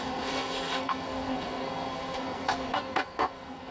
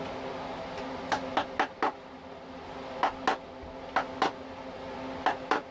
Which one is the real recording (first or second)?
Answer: second